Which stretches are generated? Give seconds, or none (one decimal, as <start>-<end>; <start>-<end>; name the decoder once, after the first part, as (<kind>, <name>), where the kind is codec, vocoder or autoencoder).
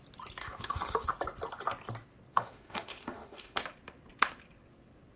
0.4-1.1 (autoencoder, DAC-VAE); 2.3-3.6